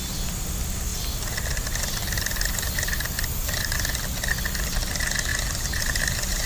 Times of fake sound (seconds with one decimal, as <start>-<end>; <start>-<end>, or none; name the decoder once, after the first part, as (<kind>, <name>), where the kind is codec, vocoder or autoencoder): 5.3-5.8 (vocoder, BigVGAN v2)